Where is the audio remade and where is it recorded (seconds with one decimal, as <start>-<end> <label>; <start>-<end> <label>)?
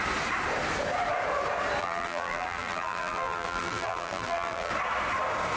0.0-1.8 recorded; 1.8-4.7 remade; 4.7-5.6 recorded